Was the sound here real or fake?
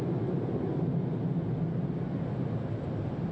real